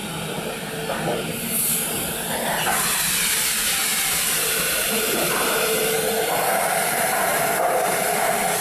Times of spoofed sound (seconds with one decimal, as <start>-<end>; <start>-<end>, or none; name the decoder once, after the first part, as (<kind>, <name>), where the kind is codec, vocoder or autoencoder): 3.9-8.6 (vocoder, BigVGAN v2)